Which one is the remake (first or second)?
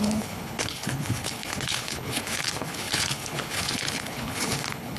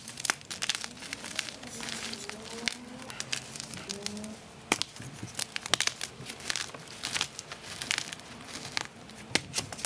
first